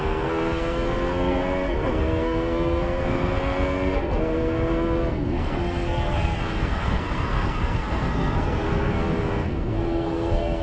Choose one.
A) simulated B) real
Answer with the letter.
A